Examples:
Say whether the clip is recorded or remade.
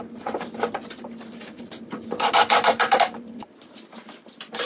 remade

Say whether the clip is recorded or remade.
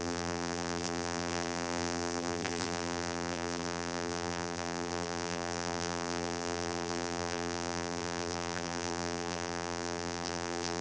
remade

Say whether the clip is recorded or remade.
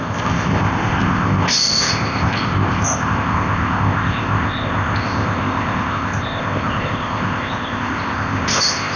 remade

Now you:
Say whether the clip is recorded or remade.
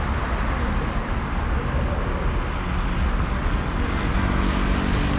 recorded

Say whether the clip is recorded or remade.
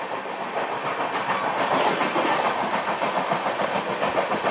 recorded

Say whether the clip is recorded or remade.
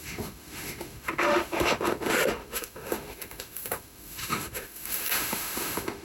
remade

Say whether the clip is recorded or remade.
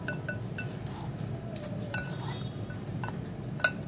recorded